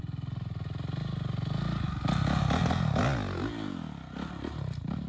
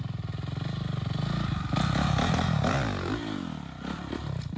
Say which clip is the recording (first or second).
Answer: first